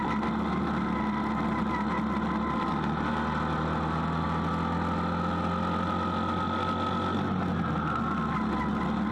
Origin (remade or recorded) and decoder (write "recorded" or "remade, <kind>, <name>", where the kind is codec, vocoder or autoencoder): recorded